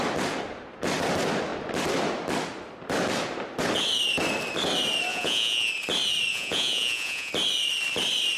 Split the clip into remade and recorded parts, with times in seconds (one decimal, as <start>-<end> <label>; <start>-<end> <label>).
0.0-5.1 recorded; 5.1-5.7 remade; 5.7-6.3 recorded; 6.3-7.3 remade; 7.3-8.4 recorded